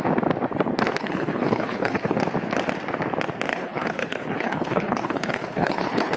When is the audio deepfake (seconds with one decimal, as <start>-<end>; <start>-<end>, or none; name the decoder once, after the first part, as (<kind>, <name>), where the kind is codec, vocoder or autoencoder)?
1.0-2.2 (codec, HILCodec); 3.5-6.2